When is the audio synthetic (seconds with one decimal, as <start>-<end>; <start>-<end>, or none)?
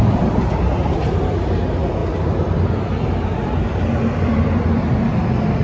0.0-5.6